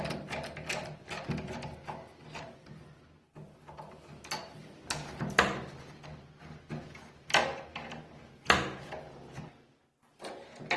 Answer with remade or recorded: recorded